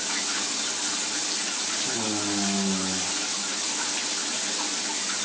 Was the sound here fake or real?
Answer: real